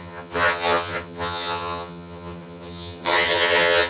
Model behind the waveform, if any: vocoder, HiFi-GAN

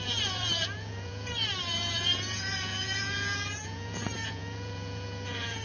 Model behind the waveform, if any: vocoder, Vocos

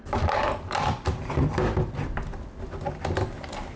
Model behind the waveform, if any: none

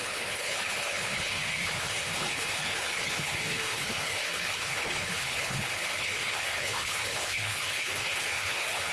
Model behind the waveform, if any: codec, HILCodec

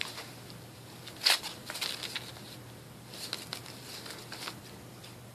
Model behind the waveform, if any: none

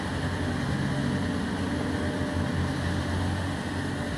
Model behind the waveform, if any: none